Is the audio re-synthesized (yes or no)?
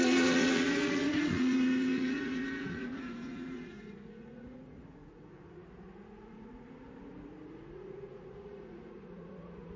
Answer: yes